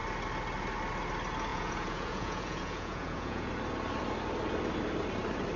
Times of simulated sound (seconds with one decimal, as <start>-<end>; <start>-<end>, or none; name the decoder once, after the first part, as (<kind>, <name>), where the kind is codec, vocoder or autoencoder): 1.5-3.5 (vocoder, Vocos)